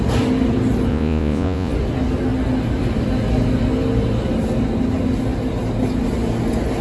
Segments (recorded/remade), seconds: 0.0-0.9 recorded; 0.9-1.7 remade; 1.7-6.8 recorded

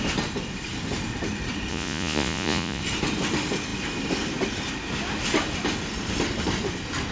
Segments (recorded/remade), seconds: 0.0-1.7 recorded; 1.7-2.8 remade; 2.8-7.1 recorded

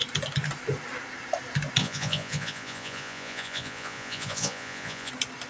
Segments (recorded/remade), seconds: 0.0-1.8 recorded; 1.8-5.1 remade; 5.1-5.5 recorded

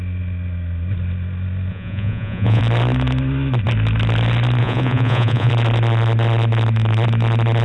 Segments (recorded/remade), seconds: 0.0-1.7 recorded; 1.7-2.6 remade; 2.6-4.6 recorded; 4.6-5.5 remade; 5.5-7.6 recorded

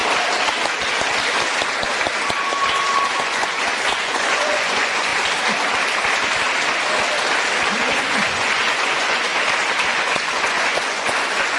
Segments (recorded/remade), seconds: 0.0-3.2 recorded; 3.2-5.1 remade; 5.1-7.8 recorded; 7.8-9.3 remade; 9.3-9.9 recorded; 9.9-11.6 remade

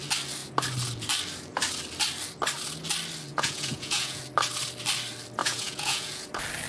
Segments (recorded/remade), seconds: 0.0-3.3 recorded; 3.3-4.2 remade; 4.2-5.4 recorded; 5.4-6.3 remade; 6.3-6.7 recorded

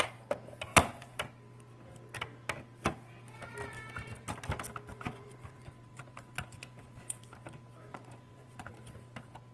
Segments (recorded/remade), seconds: 0.0-0.7 recorded; 0.7-1.2 remade; 1.2-4.9 recorded; 4.9-7.2 remade; 7.2-7.9 recorded; 7.9-8.7 remade; 8.7-9.5 recorded